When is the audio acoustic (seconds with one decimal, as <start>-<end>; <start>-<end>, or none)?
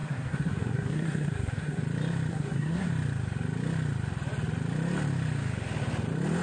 1.8-2.3; 2.9-6.4